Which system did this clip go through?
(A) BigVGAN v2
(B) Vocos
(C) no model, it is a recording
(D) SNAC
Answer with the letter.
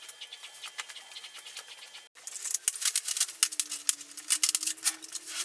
C